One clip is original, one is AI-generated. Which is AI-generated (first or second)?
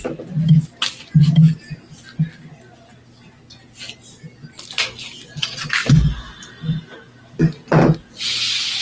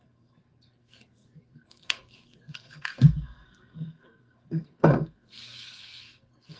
second